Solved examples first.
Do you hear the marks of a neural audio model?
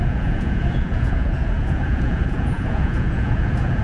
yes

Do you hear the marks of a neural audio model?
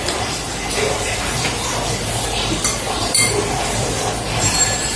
yes